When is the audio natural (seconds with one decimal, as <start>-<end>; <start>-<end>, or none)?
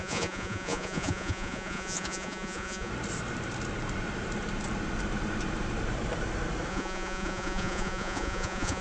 2.9-6.7